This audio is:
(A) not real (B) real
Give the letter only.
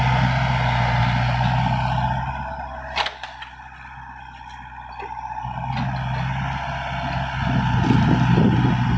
B